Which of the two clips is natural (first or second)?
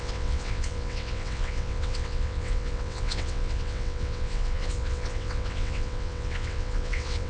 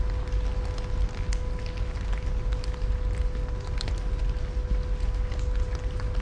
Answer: second